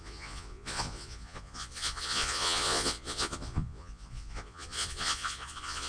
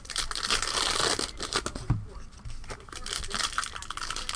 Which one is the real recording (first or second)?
second